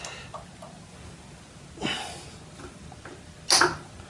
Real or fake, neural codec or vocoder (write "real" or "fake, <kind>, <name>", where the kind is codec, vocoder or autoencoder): real